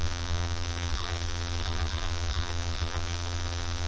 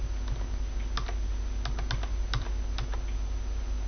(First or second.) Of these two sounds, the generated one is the first